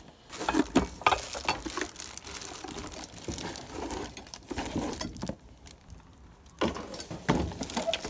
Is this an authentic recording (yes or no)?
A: yes